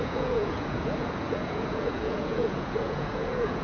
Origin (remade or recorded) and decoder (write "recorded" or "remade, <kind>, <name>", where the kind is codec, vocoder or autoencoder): remade, vocoder, Vocos